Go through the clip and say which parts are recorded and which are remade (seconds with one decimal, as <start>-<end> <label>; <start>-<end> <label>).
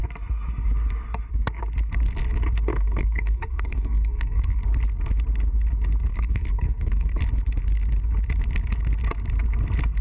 0.0-2.7 recorded; 2.7-4.6 remade; 4.6-6.1 recorded; 6.1-7.2 remade; 7.2-10.0 recorded